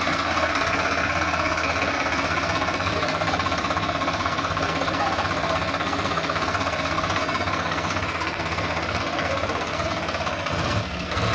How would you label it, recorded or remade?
remade